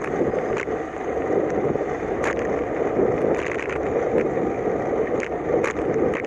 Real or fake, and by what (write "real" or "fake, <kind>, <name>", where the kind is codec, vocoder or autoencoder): real